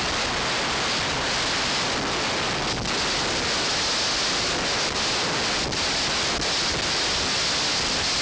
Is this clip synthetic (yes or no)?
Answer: no